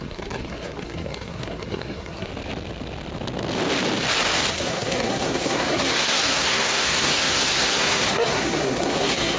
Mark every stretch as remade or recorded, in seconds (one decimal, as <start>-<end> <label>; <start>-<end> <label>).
0.0-2.3 remade; 2.3-4.5 recorded; 4.5-9.4 remade